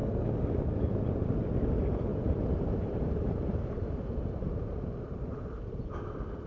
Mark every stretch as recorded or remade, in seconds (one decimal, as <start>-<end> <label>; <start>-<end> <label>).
0.0-2.1 recorded; 2.1-6.0 remade; 6.0-6.5 recorded